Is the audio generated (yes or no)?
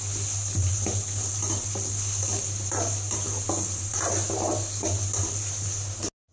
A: no